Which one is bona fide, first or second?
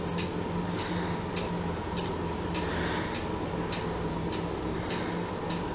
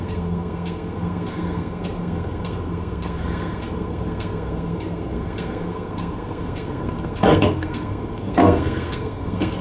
first